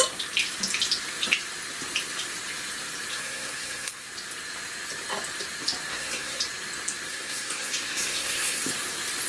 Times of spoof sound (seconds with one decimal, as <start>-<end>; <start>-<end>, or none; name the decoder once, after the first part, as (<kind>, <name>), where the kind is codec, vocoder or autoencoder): 3.1-4.1 (codec, SNAC); 5.9-6.4; 7.1-8.6